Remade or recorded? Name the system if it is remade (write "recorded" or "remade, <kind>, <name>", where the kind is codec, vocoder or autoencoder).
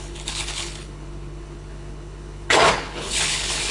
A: remade, codec, HILCodec